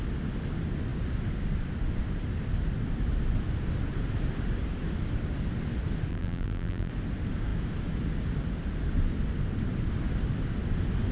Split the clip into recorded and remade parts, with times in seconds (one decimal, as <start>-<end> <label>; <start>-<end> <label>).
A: 0.0-6.1 recorded; 6.1-6.9 remade; 6.9-11.1 recorded